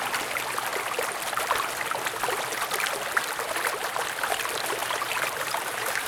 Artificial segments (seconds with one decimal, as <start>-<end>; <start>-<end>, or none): 4.8-6.1